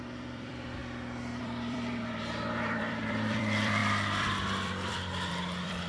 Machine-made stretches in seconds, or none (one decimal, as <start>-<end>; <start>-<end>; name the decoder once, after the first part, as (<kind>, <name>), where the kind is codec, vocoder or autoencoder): 0.0-0.8 (vocoder, BigVGAN v2); 1.4-5.9